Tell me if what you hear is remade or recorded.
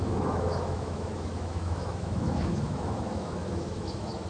remade